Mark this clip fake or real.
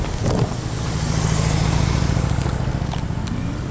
real